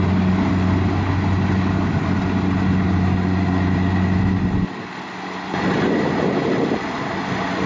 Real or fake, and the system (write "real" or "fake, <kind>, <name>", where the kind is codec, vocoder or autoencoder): real